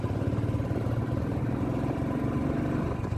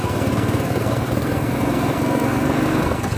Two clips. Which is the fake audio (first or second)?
second